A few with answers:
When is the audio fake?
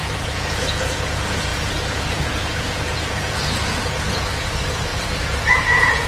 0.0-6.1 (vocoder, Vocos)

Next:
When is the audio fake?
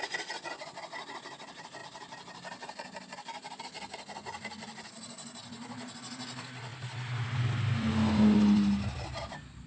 none